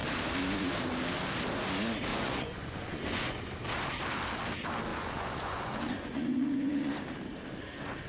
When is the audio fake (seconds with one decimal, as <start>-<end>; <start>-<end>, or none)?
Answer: 2.1-3.4; 4.9-6.9